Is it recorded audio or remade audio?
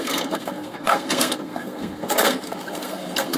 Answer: remade